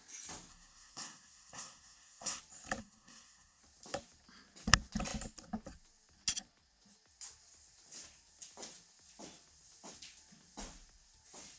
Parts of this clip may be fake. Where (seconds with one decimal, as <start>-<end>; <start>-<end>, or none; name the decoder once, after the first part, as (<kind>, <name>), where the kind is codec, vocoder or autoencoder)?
0.5-2.4 (codec, SNAC); 2.8-3.6